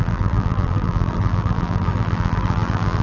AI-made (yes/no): yes